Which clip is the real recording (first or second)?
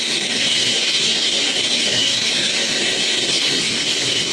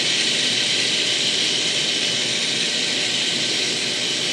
second